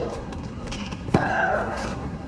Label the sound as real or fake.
fake